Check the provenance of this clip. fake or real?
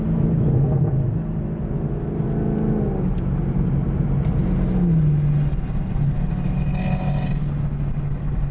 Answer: real